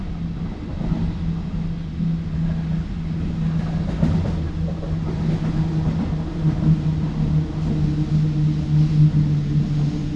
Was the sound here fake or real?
real